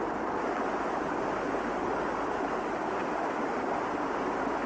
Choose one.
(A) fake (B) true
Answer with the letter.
B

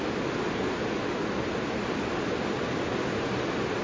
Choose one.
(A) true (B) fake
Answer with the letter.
A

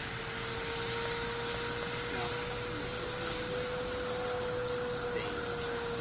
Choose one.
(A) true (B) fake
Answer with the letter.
A